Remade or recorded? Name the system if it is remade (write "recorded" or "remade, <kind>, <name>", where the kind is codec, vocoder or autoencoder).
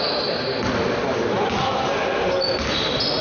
recorded